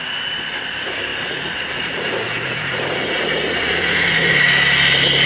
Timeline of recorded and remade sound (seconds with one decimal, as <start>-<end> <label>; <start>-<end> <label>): 0.0-1.1 recorded; 1.1-4.3 remade; 4.3-5.3 recorded